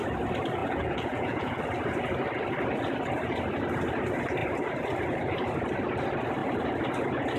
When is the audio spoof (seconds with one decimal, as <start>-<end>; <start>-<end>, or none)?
0.6-1.6